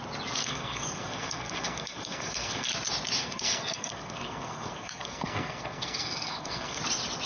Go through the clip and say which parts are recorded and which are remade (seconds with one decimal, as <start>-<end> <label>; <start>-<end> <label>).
0.0-0.4 recorded; 0.4-2.7 remade; 2.7-3.2 recorded; 3.2-6.8 remade; 6.8-7.3 recorded